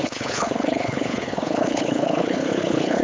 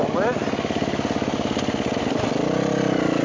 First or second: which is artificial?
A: first